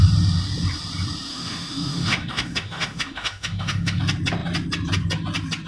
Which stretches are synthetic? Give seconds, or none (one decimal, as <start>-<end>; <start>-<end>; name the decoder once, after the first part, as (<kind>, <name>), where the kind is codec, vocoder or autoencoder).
1.3-4.0 (autoencoder, DAC-VAE)